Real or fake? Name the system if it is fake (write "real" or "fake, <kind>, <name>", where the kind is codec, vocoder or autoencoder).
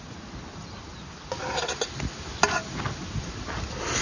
real